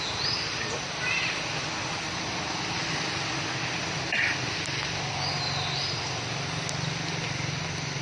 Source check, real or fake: real